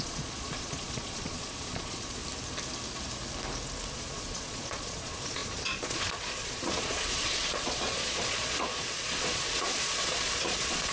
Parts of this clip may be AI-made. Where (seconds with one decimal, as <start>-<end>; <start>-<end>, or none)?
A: 0.0-2.2; 3.9-10.9